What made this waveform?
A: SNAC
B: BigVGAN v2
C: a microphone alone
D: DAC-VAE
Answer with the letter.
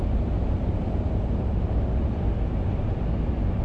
B